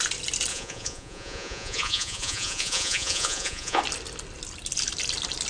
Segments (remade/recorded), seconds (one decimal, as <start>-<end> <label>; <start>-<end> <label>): 0.0-0.5 recorded; 0.5-3.8 remade; 3.8-5.5 recorded

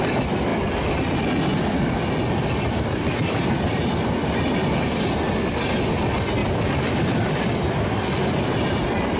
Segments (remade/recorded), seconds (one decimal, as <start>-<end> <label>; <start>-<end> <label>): 0.0-4.6 recorded; 4.6-5.3 remade; 5.3-6.4 recorded; 6.4-9.2 remade

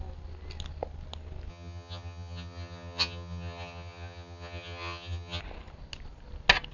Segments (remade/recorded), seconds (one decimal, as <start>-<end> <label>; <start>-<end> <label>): 0.0-1.5 recorded; 1.5-5.4 remade; 5.4-6.7 recorded